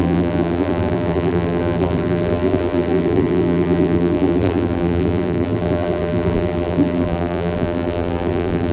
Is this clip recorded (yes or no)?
no